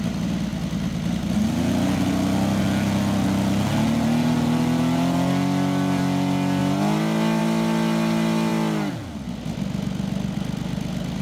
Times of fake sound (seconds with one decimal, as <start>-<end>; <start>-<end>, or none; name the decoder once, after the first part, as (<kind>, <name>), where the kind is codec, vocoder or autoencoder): 6.6-7.4 (vocoder, BigVGAN v2)